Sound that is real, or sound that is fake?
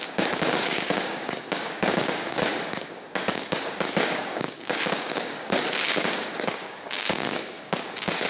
fake